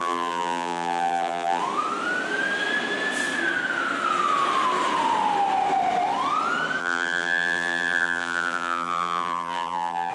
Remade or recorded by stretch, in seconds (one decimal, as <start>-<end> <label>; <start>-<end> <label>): 0.0-1.6 remade; 1.6-6.8 recorded; 6.8-10.1 remade

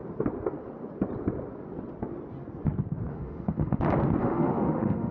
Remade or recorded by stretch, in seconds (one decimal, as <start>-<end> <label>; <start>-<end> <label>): 0.0-3.1 recorded; 3.1-3.8 remade; 3.8-4.2 recorded; 4.2-5.1 remade

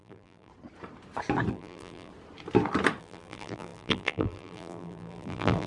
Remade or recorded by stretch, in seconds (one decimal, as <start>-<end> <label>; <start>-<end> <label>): 0.0-0.5 remade; 0.5-1.5 recorded; 1.5-2.1 remade; 2.1-3.0 recorded; 3.0-5.7 remade

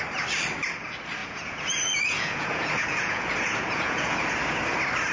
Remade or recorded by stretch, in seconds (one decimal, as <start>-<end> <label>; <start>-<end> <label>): 0.0-1.2 recorded; 1.2-4.3 remade; 4.3-5.1 recorded